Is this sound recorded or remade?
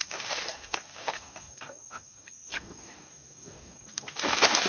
remade